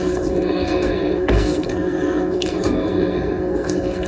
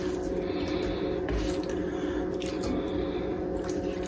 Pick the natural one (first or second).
second